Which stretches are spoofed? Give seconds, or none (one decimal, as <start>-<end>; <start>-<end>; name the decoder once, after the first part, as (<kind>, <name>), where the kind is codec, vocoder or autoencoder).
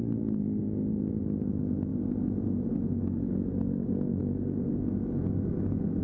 0.6-1.1 (vocoder, Vocos); 1.9-3.5; 4.2-5.3